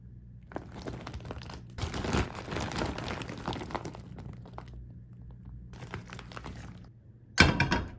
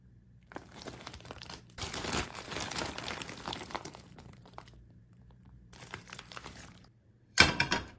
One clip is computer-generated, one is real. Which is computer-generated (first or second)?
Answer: second